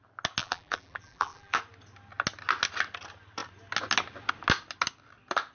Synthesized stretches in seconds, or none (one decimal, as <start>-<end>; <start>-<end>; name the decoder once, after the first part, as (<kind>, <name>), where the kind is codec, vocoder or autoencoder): 0.4-1.6 (vocoder, BigVGAN v2)